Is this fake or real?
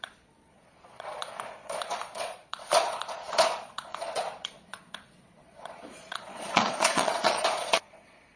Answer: fake